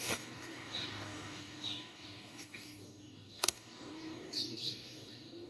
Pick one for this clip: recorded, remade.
remade